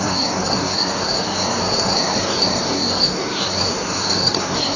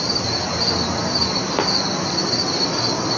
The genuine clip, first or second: second